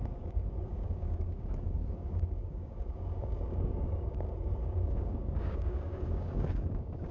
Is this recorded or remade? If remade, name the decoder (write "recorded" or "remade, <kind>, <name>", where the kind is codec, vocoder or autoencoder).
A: remade, codec, DAC